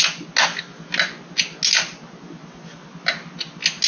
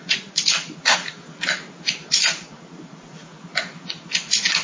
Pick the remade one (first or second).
second